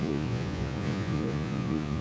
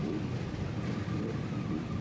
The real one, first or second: second